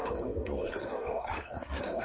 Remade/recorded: remade